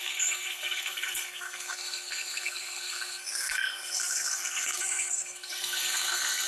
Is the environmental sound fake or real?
fake